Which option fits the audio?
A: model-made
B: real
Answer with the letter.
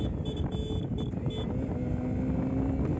B